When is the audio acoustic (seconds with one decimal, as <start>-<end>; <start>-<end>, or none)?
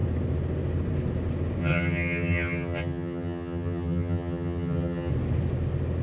0.0-1.6; 5.1-6.0